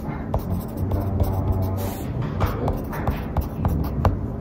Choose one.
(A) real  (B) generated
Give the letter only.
A